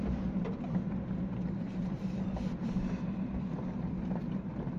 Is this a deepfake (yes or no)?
yes